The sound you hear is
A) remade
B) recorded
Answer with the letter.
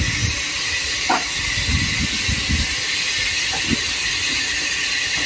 B